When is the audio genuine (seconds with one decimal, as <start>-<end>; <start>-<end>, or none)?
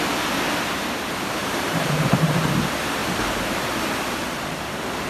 0.0-1.4; 2.2-5.1